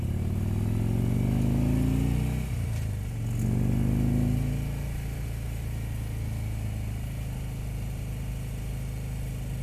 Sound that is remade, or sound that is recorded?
recorded